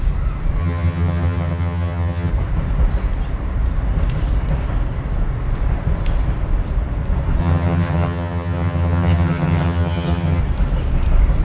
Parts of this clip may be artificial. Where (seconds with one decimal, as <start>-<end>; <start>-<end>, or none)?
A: 0.6-2.3; 7.4-10.4